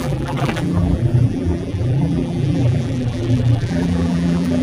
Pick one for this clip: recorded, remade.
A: remade